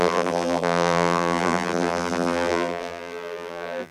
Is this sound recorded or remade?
remade